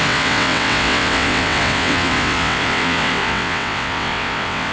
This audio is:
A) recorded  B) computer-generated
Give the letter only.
B